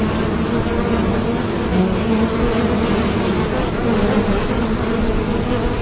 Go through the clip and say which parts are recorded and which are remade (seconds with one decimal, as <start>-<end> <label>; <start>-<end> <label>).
0.0-5.8 recorded